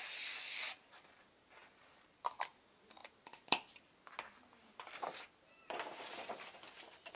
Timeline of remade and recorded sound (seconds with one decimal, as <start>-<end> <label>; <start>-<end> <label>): 0.0-1.6 recorded; 1.6-2.3 remade; 2.3-3.0 recorded; 3.0-3.8 remade; 3.8-7.2 recorded